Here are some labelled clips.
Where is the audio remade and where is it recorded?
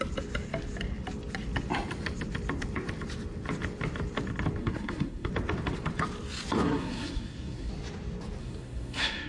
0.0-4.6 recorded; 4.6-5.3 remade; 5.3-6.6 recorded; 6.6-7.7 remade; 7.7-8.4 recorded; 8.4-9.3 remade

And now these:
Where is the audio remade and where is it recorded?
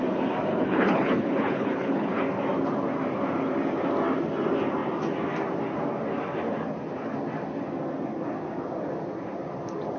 0.0-0.5 recorded; 0.5-2.2 remade; 2.2-10.0 recorded